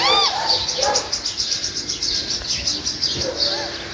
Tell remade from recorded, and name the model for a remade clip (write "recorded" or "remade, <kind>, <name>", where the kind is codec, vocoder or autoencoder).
recorded